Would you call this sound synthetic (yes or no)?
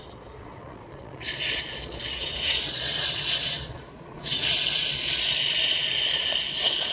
yes